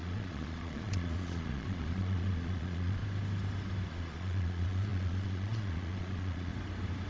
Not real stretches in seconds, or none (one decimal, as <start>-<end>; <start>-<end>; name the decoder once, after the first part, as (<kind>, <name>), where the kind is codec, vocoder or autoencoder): 0.0-3.0 (vocoder, Vocos); 3.9-6.5